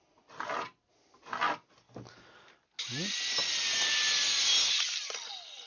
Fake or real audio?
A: real